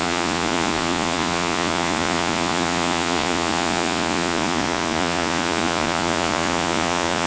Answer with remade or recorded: remade